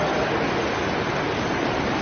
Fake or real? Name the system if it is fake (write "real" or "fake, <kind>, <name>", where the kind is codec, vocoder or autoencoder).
real